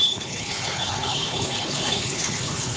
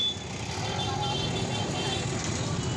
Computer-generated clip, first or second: first